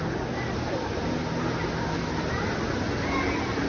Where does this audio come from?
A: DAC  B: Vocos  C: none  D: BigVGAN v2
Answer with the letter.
C